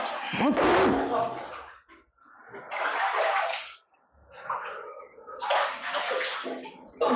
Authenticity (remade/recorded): recorded